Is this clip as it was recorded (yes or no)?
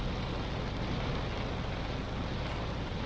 yes